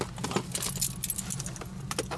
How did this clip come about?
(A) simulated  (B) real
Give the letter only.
B